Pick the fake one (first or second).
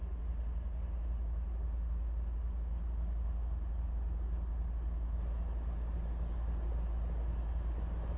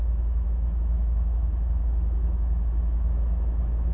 second